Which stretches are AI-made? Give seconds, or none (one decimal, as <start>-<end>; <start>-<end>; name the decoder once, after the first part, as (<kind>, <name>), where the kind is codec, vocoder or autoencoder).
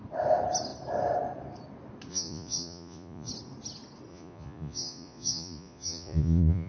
2.1-3.3 (vocoder, Vocos); 4.1-6.7